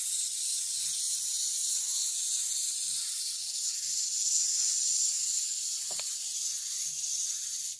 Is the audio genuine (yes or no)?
yes